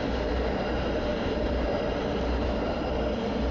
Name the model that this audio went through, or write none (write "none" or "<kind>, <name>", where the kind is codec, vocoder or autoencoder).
none